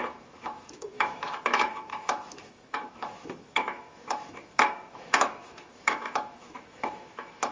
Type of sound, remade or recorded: remade